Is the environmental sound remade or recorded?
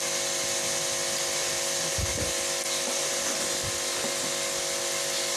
recorded